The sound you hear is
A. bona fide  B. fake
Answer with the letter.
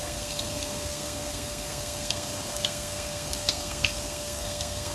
B